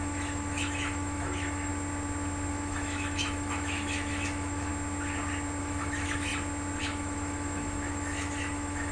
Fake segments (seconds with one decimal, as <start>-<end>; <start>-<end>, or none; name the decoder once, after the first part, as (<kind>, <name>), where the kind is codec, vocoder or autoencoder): 0.0-1.7 (autoencoder, DAC-VAE); 2.5-4.7; 5.6-6.3; 6.8-8.9

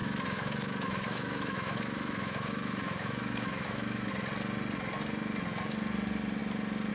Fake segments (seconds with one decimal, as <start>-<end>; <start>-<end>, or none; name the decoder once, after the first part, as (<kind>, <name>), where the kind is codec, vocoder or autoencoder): 0.0-4.1 (autoencoder, DAC-VAE)

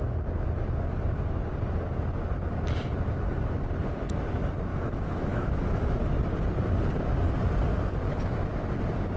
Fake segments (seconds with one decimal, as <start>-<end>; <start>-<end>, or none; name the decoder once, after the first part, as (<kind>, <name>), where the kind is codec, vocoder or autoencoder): 4.7-6.1 (autoencoder, DAC-VAE)

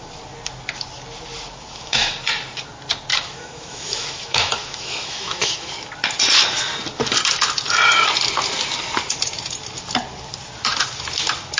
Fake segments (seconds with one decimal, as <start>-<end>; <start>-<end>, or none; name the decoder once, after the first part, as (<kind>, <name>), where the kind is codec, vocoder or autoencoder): 1.5-2.1 (autoencoder, DAC-VAE); 3.1-5.7

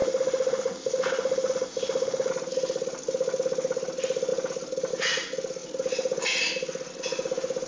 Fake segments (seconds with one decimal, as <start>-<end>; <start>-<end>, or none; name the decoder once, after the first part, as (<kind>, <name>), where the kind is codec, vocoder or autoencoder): 0.0-2.3 (autoencoder, DAC-VAE)